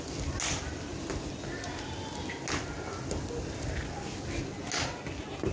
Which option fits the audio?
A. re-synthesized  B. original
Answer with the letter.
B